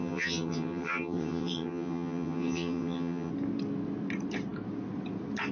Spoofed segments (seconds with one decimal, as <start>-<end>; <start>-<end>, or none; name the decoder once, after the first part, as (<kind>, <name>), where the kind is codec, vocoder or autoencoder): 0.0-3.3 (vocoder, HiFi-GAN)